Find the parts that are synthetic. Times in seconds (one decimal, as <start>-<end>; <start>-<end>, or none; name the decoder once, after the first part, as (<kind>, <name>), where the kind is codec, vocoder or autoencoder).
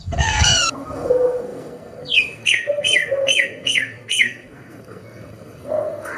0.0-6.2 (codec, SNAC)